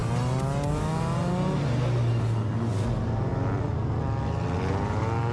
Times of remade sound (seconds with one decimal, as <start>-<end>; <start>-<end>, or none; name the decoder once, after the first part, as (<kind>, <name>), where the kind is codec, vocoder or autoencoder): none